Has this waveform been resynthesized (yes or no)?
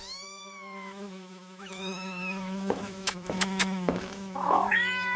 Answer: yes